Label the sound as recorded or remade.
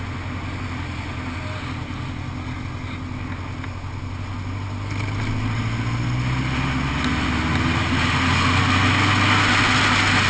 recorded